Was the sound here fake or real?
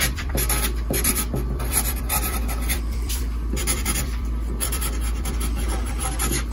fake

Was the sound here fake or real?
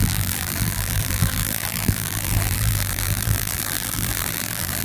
fake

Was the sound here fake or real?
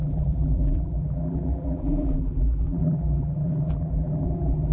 fake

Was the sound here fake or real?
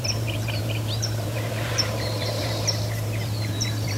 fake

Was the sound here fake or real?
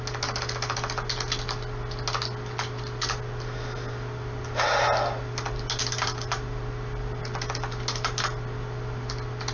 real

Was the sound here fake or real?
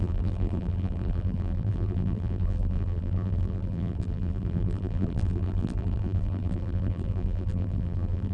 fake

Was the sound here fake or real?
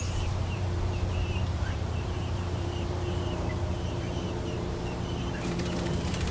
fake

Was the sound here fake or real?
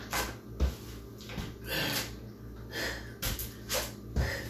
real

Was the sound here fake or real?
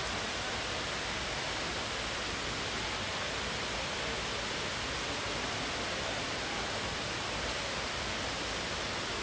real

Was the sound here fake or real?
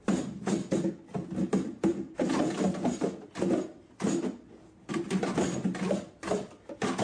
real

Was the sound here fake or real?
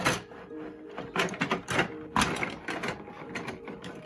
real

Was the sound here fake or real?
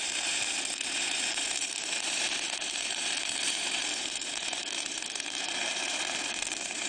fake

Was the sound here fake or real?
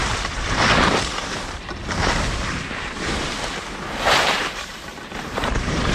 fake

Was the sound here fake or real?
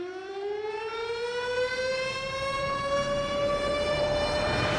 fake